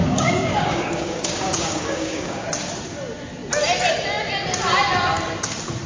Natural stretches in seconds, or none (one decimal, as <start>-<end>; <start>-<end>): 2.5-5.9

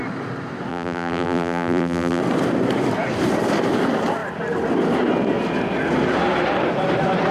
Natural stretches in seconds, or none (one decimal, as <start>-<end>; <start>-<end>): 0.0-0.7; 2.2-7.3

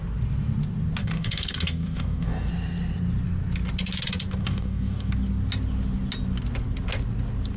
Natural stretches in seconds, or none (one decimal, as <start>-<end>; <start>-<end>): 0.0-1.0; 2.5-4.4; 5.1-7.6

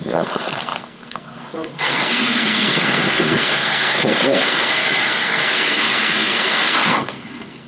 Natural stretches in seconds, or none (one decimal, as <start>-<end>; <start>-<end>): none

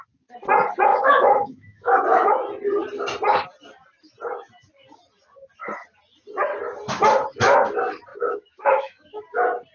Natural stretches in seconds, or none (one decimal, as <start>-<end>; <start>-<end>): 0.0-0.9; 2.0-8.1; 9.2-9.7

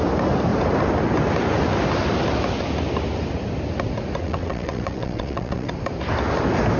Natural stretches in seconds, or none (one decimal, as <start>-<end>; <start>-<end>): 0.0-4.2; 5.7-6.8

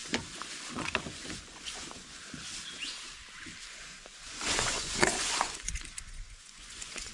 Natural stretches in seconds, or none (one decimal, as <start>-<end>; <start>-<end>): 2.4-3.7